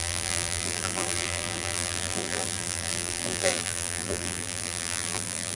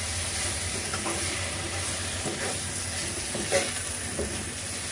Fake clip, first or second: first